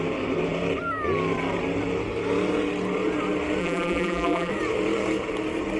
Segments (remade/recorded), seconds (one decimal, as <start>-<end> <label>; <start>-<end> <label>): 0.0-3.6 recorded; 3.6-4.5 remade; 4.5-5.8 recorded